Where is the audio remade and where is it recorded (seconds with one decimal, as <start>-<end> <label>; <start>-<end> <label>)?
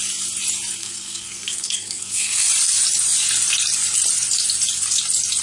0.0-0.8 recorded; 0.8-2.5 remade; 2.5-5.4 recorded